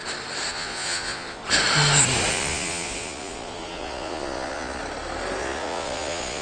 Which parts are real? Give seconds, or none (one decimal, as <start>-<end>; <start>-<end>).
0.0-0.5; 1.4-2.3; 4.8-5.4